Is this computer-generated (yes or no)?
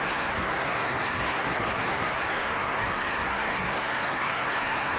yes